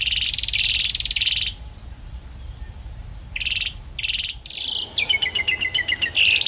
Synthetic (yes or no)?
no